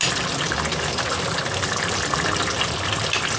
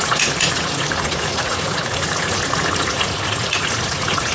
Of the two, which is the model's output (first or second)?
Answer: second